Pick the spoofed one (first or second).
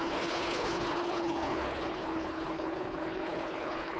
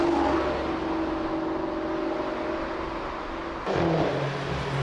first